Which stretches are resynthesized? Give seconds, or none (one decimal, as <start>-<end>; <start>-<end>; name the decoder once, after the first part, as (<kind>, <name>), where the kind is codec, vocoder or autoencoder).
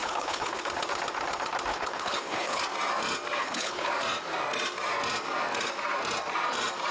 0.0-0.7 (codec, HILCodec); 1.7-2.6; 3.4-3.9